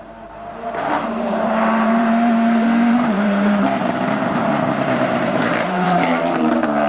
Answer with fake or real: fake